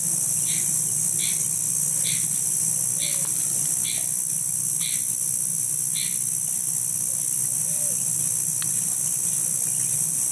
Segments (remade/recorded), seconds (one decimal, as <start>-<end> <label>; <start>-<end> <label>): 0.0-10.3 recorded